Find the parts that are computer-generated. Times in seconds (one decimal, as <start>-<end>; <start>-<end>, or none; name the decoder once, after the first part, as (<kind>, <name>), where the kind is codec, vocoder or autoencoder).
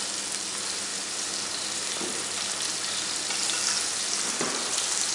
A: 0.9-4.0 (vocoder, BigVGAN v2)